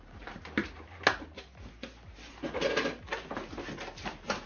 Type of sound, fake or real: real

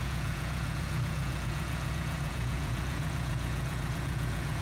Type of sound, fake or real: fake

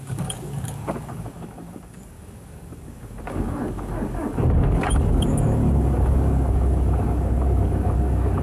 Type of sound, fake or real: fake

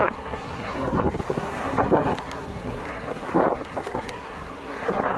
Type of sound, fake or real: fake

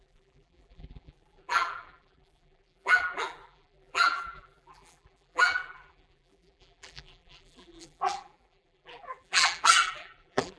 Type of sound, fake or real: fake